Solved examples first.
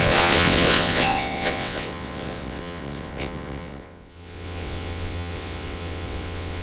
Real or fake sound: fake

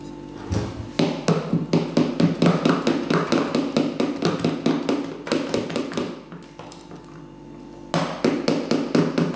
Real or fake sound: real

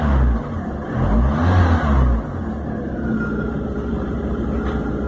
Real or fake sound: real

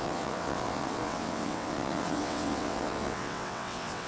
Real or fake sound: fake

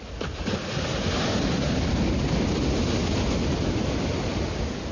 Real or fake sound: real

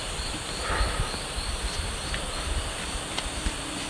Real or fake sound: real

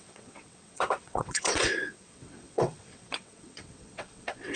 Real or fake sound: fake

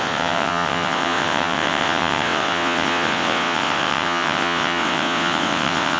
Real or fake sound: fake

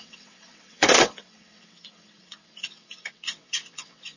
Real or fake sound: fake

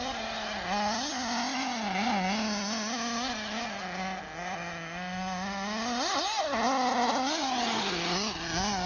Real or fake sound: real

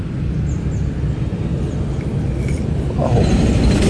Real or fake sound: real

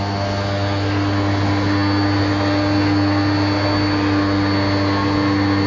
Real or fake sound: real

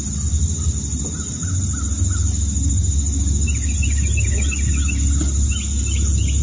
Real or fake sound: real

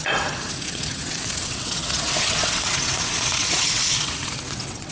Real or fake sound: fake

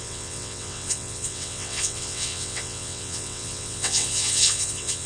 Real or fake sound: fake